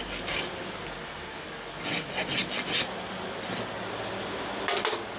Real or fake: real